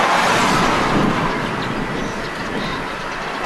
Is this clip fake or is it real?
real